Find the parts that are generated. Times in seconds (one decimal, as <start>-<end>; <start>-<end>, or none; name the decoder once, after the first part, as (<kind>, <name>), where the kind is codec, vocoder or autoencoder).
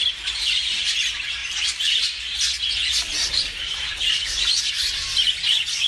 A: 3.0-4.7 (vocoder, BigVGAN v2)